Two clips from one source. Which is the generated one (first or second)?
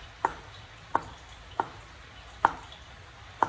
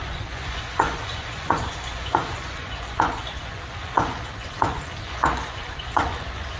second